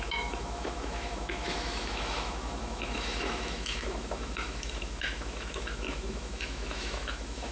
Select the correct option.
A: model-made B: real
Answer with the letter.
A